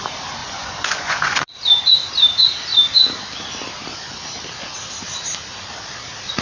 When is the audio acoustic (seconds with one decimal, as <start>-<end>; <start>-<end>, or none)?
0.0-0.4; 1.5-6.4